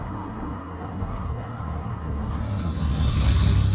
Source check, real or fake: fake